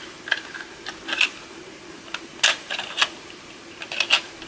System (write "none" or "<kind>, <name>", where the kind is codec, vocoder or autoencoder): none